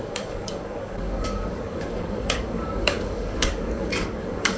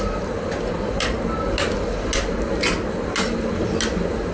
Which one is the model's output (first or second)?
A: first